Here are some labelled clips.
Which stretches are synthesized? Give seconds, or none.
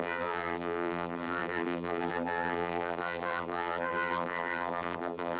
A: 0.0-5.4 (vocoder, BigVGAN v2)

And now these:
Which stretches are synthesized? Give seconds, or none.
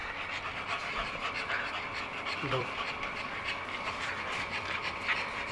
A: 2.1-4.9 (vocoder, BigVGAN v2)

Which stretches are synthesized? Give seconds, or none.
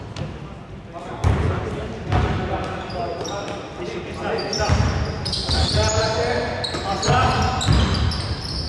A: 3.1-3.8 (vocoder, BigVGAN v2)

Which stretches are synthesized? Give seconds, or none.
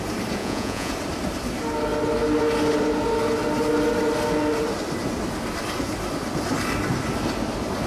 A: 0.4-0.9 (vocoder, Vocos)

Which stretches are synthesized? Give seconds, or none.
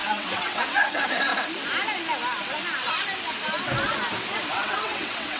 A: 0.0-1.3 (vocoder, WaveNeXt); 4.5-5.4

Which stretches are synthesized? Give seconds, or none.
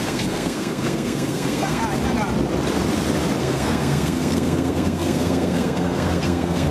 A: 0.0-1.8 (codec, SNAC); 3.4-6.7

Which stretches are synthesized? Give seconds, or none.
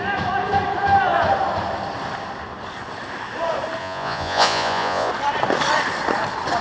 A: 3.8-5.1 (vocoder, Vocos)